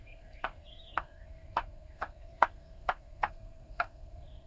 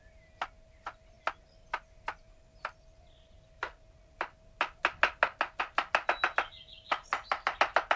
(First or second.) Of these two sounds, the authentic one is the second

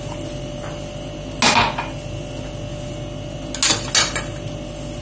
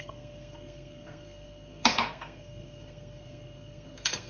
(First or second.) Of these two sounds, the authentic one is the first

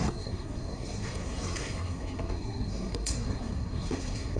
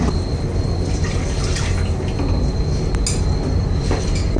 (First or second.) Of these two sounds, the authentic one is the second